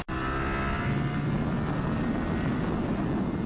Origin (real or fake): real